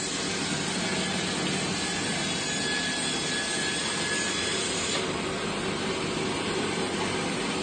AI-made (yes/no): no